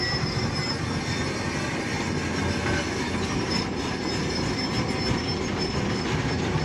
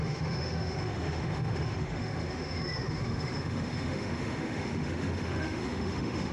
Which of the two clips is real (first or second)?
first